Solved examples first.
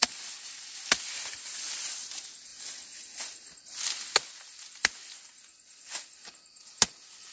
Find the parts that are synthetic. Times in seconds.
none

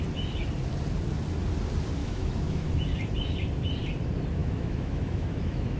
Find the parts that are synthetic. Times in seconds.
2.0-2.7 (autoencoder, DAC-VAE); 4.4-5.8

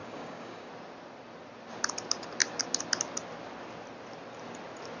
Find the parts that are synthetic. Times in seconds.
0.0-0.7 (codec, DAC)

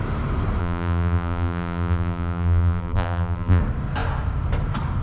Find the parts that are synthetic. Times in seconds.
0.6-3.6 (vocoder, BigVGAN v2)

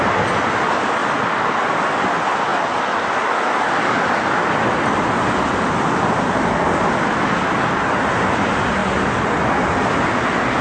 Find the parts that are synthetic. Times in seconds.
none

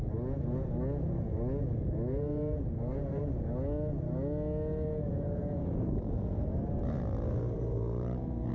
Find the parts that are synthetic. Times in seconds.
2.1-3.2 (vocoder, BigVGAN v2); 5.1-8.5

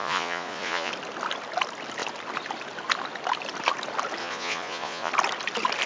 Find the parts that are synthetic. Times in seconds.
0.0-0.9 (vocoder, Vocos); 4.2-5.1

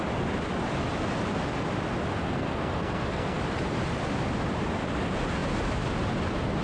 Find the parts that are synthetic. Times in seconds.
2.2-3.4 (codec, SNAC)